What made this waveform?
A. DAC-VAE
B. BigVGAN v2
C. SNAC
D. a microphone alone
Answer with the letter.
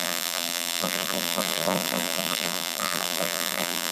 B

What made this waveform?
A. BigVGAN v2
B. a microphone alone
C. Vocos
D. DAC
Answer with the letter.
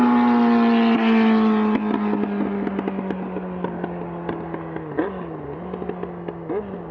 B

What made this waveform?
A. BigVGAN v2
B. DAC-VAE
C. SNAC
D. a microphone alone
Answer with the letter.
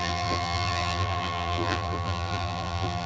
A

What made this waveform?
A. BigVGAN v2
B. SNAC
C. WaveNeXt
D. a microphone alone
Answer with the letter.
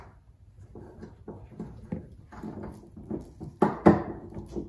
D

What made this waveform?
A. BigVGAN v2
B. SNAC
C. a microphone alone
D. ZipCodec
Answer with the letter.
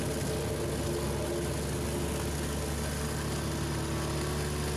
C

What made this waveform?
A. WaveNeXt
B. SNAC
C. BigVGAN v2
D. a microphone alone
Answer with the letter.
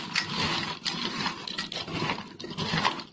D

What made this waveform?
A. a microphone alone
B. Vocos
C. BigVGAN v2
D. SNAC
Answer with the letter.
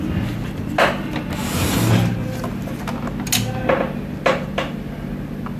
A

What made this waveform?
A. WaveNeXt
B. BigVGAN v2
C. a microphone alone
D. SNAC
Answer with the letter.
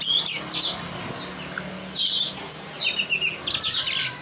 C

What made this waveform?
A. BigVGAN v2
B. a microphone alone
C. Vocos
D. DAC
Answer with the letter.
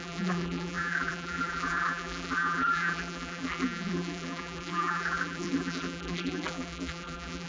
A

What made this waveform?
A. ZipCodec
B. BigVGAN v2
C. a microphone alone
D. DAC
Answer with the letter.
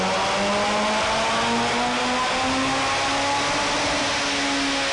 C